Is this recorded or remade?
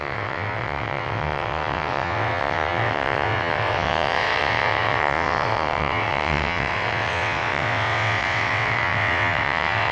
remade